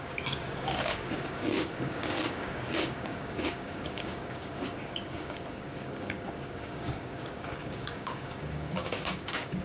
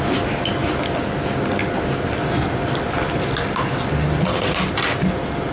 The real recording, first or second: second